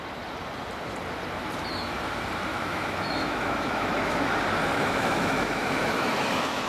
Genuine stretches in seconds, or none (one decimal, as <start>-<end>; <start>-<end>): 0.0-2.5; 4.3-4.7